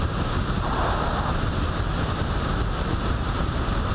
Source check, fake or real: real